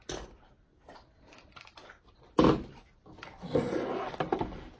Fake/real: real